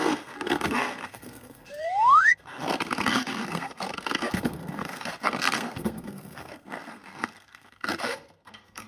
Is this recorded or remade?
remade